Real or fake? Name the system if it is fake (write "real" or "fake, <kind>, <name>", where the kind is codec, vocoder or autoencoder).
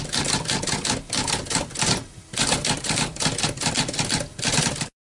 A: real